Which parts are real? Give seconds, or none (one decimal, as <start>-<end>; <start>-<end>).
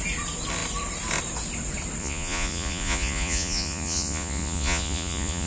0.0-2.0